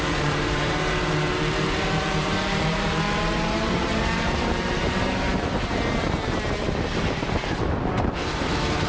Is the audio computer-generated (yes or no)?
yes